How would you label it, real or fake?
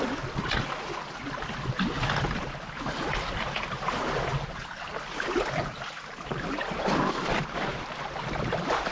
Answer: real